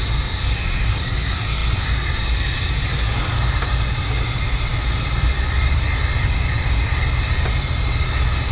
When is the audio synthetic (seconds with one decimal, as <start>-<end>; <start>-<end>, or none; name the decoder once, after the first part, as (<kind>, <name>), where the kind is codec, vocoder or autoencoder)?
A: none